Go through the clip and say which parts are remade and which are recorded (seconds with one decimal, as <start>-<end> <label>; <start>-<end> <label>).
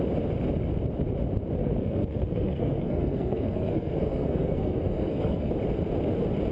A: 0.0-1.6 recorded; 1.6-5.5 remade; 5.5-6.5 recorded